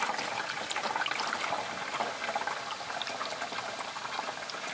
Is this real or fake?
real